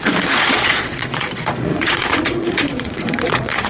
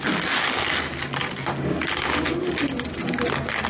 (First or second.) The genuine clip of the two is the second